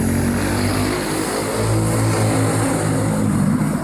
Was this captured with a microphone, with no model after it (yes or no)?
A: yes